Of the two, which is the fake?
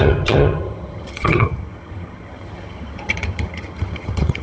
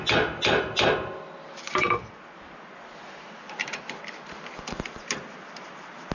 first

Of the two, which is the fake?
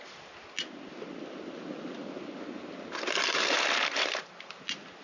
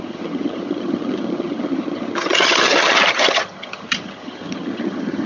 second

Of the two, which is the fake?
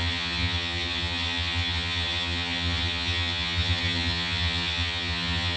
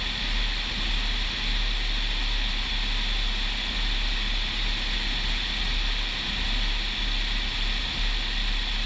first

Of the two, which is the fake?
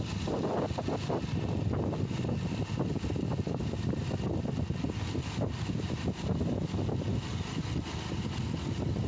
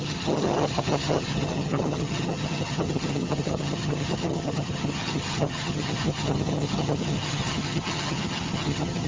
second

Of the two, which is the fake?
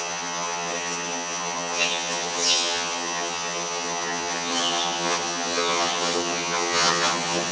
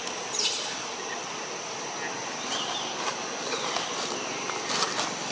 first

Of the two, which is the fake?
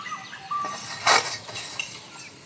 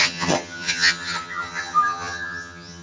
second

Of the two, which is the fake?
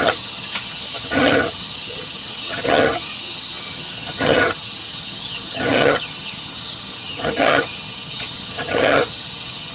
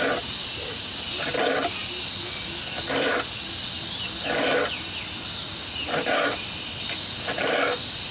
first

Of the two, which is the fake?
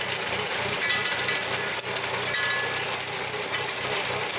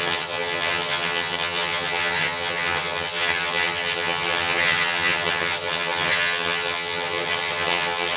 second